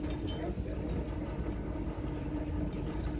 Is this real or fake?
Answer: real